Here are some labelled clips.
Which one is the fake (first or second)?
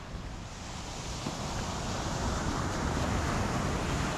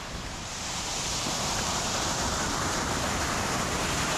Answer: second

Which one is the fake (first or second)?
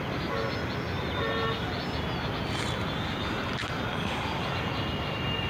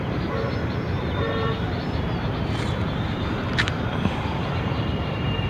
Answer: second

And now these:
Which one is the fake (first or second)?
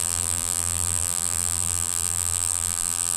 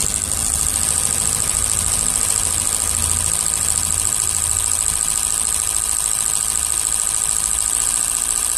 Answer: first